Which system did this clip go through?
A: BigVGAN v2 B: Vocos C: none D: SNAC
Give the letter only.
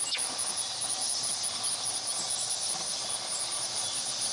C